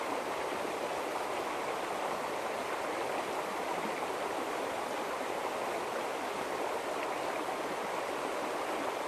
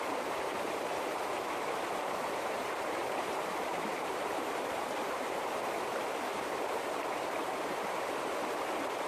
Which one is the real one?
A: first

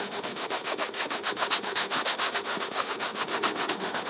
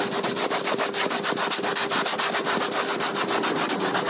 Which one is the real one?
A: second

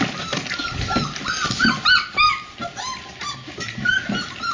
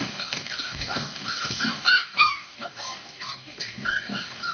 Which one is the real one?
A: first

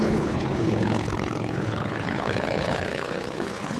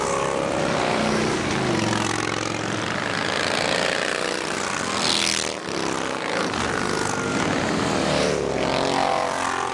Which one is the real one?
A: second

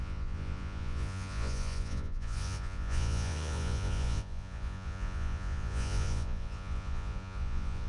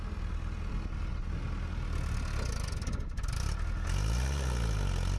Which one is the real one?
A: second